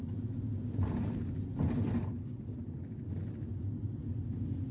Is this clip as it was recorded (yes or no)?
yes